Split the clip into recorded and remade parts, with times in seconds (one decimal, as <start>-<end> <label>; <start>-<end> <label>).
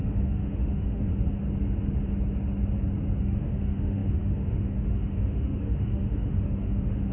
0.0-1.1 remade; 1.1-3.2 recorded; 3.2-7.1 remade